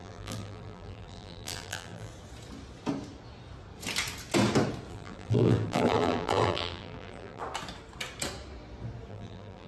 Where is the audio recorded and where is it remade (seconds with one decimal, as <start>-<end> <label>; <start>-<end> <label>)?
0.0-2.1 remade; 2.1-4.9 recorded; 4.9-7.4 remade; 7.4-9.1 recorded; 9.1-9.7 remade